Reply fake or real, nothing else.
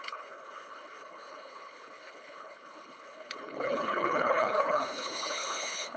fake